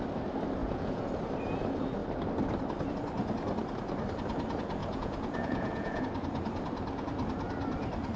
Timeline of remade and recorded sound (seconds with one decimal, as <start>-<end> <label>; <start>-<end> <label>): 0.0-0.6 recorded; 0.6-1.1 remade; 1.1-4.8 recorded; 4.8-6.0 remade; 6.0-8.2 recorded